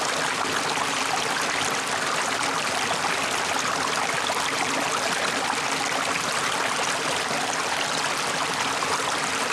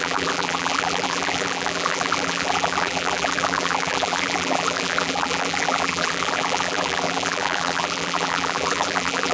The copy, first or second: second